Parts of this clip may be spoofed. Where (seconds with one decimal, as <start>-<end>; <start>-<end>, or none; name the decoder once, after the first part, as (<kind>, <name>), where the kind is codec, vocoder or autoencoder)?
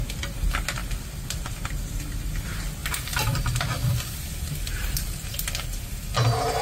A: 2.8-5.5 (vocoder, BigVGAN v2)